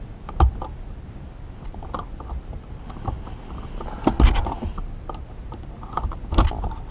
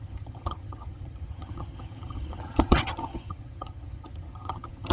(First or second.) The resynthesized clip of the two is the second